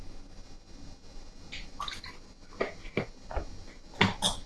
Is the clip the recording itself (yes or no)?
yes